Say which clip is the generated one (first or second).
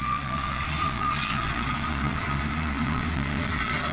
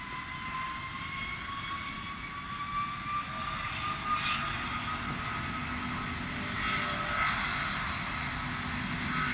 first